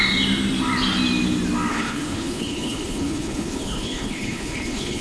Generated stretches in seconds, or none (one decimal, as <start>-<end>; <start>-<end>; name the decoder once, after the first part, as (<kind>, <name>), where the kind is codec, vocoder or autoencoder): 1.7-5.0 (codec, HILCodec)

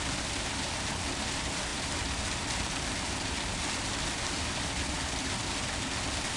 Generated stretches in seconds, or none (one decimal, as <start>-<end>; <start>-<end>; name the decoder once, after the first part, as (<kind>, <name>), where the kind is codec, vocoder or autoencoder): none

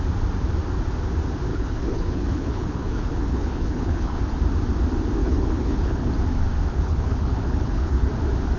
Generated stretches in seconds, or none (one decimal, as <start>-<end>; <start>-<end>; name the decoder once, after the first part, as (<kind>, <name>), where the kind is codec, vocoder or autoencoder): 1.5-4.2 (codec, HILCodec); 5.2-6.1; 6.7-8.1

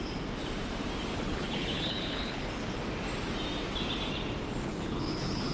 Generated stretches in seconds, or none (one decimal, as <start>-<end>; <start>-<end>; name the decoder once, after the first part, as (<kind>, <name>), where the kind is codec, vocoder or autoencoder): 1.1-2.5 (codec, HILCodec); 4.6-5.5